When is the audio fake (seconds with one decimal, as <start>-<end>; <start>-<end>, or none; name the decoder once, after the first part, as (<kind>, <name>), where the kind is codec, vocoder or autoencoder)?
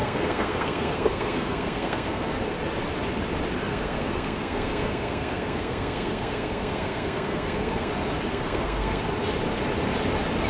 0.0-2.6 (codec, SNAC); 3.7-7.9; 8.3-9.0